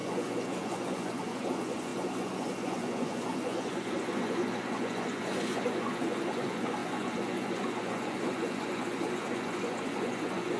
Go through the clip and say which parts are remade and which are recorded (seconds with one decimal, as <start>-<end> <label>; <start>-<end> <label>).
0.0-10.6 remade